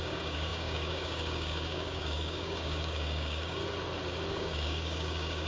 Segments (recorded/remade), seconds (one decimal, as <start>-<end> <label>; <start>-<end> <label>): 0.0-3.6 remade; 3.6-4.3 recorded; 4.3-5.5 remade